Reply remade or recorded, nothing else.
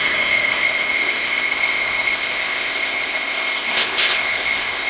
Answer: remade